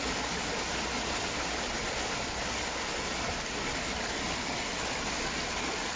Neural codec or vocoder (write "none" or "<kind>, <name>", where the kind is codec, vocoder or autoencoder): none